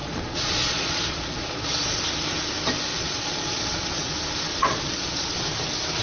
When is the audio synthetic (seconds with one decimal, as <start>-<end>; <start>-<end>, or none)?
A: 0.0-2.0; 2.9-4.1; 4.5-5.4